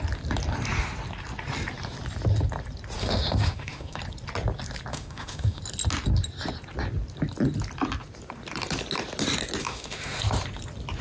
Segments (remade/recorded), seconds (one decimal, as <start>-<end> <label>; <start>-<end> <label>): 0.0-3.0 recorded; 3.0-4.0 remade; 4.0-4.9 recorded; 4.9-5.6 remade; 5.6-9.6 recorded; 9.6-10.2 remade; 10.2-11.0 recorded